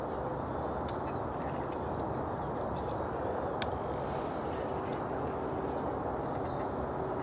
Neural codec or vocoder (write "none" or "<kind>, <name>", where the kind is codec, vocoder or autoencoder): none